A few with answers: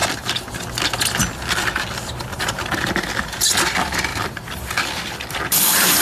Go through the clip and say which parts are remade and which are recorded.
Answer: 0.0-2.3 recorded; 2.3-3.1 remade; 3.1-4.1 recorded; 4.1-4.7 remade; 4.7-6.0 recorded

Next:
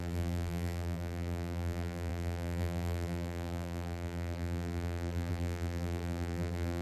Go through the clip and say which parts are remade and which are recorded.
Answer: 0.0-6.8 remade